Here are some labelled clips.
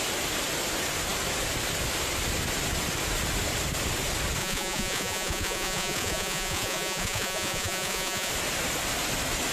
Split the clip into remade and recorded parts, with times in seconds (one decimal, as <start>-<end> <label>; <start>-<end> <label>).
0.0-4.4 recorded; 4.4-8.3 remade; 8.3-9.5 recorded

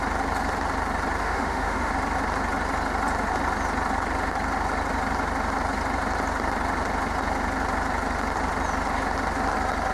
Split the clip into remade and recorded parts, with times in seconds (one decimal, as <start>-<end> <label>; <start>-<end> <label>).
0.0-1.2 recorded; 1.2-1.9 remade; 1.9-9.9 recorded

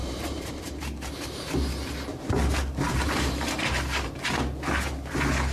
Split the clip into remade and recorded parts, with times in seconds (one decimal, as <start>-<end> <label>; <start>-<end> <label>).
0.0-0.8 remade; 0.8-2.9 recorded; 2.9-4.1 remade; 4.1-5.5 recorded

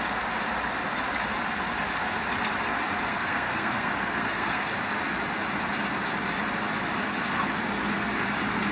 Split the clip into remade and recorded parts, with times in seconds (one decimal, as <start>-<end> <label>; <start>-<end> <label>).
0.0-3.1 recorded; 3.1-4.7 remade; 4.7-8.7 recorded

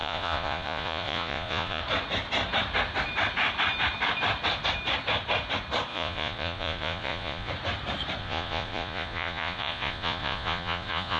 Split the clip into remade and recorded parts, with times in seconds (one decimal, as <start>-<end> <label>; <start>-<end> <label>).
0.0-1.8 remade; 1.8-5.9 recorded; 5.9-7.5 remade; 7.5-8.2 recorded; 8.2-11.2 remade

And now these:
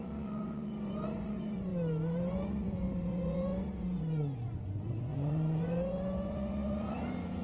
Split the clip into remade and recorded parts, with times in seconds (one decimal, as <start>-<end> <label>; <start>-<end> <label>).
0.0-1.7 remade; 1.7-2.3 recorded; 2.3-7.4 remade

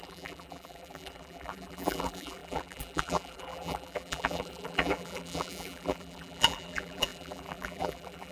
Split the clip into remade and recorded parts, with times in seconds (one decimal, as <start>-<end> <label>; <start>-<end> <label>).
0.0-8.3 remade